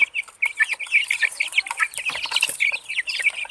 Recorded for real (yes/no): yes